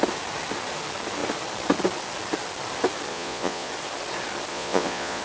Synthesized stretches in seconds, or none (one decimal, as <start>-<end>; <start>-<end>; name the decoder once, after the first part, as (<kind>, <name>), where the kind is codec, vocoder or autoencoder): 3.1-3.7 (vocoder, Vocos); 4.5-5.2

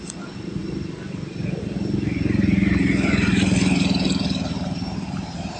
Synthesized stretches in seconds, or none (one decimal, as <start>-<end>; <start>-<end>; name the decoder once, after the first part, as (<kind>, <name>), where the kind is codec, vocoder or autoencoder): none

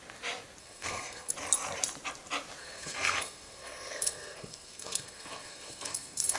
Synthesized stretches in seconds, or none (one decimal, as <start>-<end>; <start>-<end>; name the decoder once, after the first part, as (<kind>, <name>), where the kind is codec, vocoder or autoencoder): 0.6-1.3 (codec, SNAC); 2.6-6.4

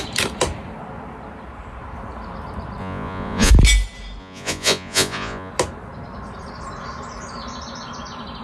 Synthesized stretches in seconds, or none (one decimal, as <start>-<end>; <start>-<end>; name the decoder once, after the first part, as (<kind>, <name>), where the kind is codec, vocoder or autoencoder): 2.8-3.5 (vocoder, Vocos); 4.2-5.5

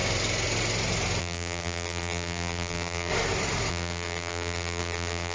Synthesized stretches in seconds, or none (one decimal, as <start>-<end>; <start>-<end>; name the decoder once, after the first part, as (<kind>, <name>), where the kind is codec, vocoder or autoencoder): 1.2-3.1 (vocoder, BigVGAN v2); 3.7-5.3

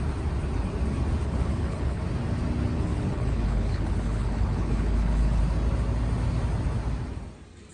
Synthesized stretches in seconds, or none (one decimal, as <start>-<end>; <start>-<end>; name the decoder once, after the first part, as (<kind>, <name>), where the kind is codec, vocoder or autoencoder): 1.2-2.0 (codec, HILCodec); 2.7-5.4

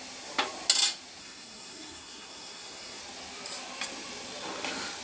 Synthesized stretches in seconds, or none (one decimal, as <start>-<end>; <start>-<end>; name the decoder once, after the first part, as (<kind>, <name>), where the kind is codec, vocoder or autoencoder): 1.2-3.0 (codec, SNAC)

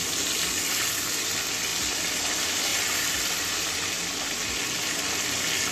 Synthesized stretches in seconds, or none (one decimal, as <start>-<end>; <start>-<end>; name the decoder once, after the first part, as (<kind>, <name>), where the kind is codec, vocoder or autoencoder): none